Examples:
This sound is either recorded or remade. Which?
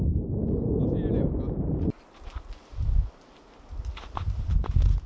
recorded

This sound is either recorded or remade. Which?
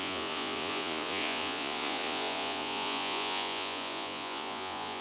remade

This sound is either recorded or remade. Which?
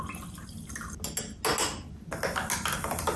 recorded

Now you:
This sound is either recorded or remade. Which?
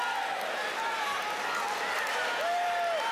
recorded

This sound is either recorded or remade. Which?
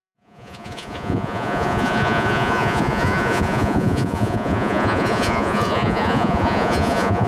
remade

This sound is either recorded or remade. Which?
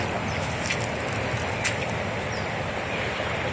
recorded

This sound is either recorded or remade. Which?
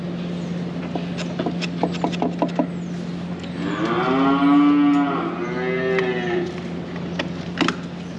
recorded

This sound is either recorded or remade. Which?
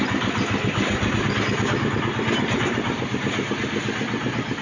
recorded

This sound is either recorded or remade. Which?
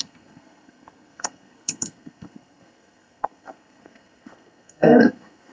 remade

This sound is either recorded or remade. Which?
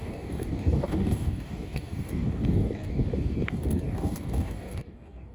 remade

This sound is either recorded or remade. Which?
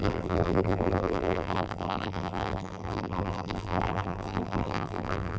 remade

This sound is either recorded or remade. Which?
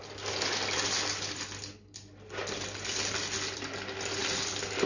recorded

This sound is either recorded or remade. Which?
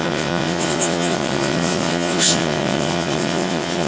remade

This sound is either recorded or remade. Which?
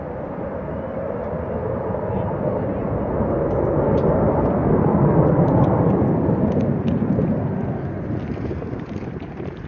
recorded